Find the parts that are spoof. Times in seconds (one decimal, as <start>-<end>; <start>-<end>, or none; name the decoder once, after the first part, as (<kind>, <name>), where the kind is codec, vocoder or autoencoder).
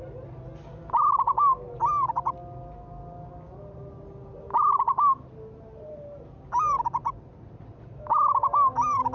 none